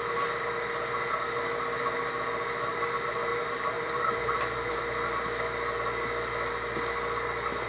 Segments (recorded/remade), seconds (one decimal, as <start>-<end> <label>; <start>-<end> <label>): 0.0-3.3 recorded; 3.3-4.8 remade; 4.8-7.7 recorded